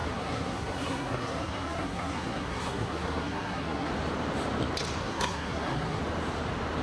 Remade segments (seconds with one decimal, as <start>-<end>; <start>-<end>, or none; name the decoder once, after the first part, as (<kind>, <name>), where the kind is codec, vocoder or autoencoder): 0.0-3.9 (codec, SNAC); 5.0-6.0

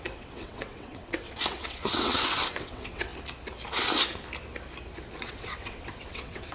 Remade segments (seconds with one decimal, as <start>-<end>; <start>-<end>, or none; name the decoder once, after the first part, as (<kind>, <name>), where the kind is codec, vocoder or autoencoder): 0.0-3.1 (vocoder, WaveNeXt); 5.2-6.5

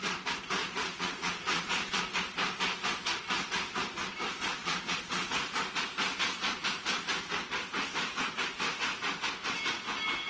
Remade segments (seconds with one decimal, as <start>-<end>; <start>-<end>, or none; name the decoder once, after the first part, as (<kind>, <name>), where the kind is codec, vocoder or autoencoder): 0.6-2.0 (vocoder, Vocos); 4.6-5.3

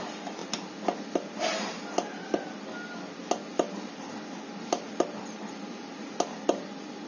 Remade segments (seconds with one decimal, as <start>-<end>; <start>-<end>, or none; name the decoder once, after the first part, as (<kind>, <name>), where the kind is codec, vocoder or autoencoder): none

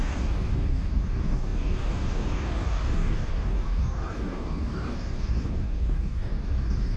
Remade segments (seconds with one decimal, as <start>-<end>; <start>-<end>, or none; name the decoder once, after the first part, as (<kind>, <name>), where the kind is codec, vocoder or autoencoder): 0.0-7.0 (codec, DAC)

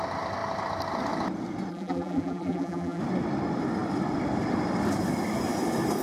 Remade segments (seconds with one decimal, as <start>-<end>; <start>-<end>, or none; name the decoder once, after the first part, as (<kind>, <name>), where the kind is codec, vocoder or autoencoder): 1.7-3.0 (vocoder, BigVGAN v2)

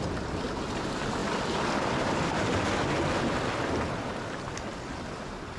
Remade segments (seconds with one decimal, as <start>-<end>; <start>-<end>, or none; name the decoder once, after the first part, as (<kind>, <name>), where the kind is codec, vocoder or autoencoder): none

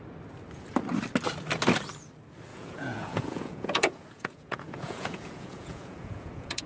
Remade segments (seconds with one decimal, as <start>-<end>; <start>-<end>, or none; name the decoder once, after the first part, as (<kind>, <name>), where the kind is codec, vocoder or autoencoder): 2.5-6.7 (vocoder, Vocos)